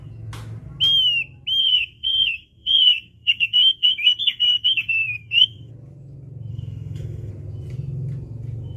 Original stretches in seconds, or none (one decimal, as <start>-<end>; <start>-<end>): 0.0-1.6; 5.7-6.5; 7.3-8.8